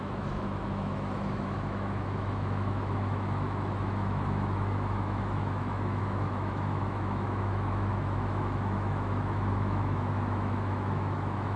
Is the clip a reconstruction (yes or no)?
yes